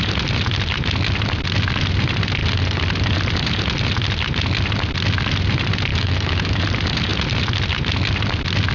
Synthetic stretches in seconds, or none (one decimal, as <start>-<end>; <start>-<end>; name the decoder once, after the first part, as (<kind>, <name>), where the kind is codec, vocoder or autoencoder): 5.9-6.6 (autoencoder, DAC-VAE)